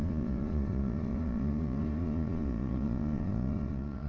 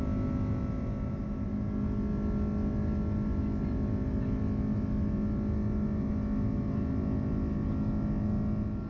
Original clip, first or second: second